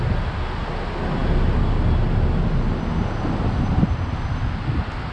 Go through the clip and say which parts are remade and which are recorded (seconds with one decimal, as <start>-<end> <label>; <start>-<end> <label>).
0.0-5.1 recorded